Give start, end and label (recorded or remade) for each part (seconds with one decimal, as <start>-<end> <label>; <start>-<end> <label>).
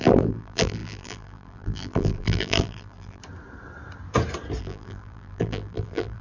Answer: 0.0-3.2 remade; 3.2-4.6 recorded; 4.6-6.2 remade